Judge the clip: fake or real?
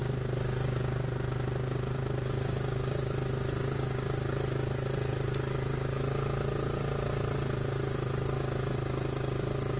real